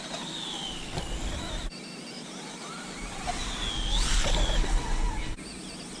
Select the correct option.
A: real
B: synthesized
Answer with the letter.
A